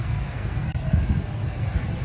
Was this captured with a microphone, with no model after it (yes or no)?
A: no